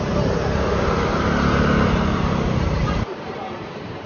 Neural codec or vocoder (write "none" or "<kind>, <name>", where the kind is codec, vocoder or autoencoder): vocoder, BigVGAN v2